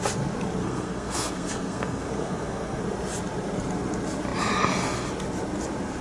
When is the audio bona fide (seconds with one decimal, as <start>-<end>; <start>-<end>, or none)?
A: 0.0-0.6; 2.8-6.0